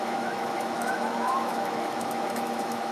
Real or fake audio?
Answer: fake